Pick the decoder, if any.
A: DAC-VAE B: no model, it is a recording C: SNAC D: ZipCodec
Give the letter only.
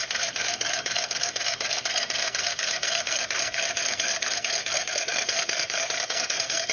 C